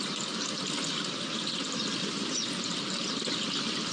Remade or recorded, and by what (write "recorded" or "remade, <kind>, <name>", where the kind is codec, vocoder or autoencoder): recorded